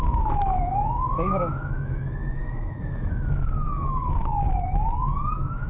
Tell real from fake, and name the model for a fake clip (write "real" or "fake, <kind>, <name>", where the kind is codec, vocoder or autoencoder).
fake, autoencoder, DAC-VAE